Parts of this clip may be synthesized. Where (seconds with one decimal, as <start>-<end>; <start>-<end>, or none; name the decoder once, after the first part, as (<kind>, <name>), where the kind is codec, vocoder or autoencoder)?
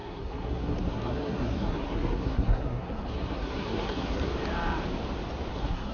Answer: 0.0-4.3 (codec, SNAC); 5.5-5.9